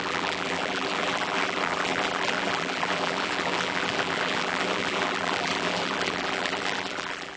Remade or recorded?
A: remade